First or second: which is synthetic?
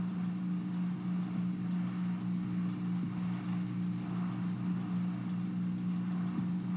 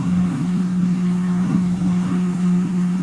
second